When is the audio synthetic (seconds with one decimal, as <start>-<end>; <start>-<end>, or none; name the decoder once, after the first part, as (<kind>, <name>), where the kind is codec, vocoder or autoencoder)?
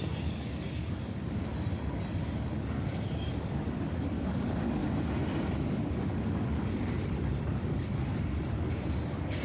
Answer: 0.0-1.5 (codec, DAC); 2.2-4.8; 5.5-9.4